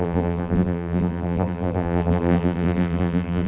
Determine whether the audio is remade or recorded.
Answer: remade